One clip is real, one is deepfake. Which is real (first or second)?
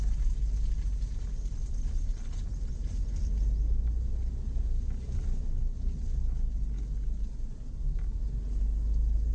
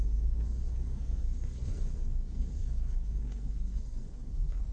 first